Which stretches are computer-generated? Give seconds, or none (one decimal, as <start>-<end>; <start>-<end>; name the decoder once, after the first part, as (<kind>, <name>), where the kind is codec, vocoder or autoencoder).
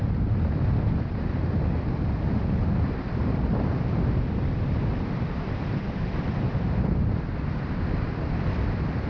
3.1-9.1 (vocoder, BigVGAN v2)